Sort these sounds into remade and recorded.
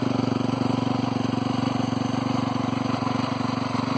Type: recorded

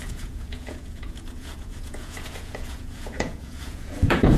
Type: remade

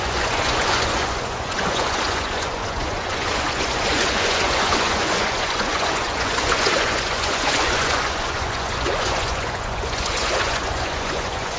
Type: remade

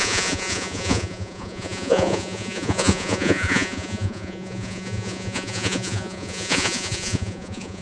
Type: remade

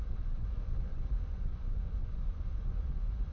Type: remade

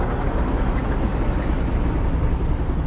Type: recorded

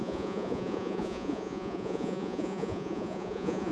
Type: remade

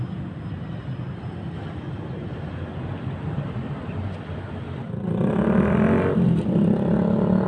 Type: recorded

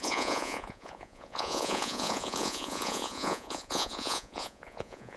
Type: remade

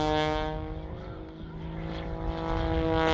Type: recorded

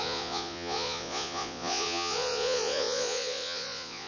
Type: remade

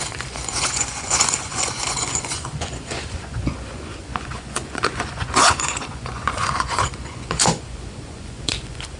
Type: remade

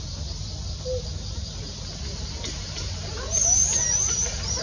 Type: recorded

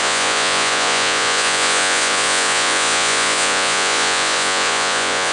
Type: remade